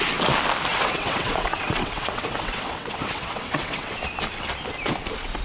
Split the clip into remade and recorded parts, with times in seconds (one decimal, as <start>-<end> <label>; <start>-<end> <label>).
0.0-0.7 recorded; 0.7-3.9 remade; 3.9-5.4 recorded